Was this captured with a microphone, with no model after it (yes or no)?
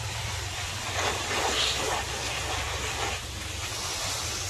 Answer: yes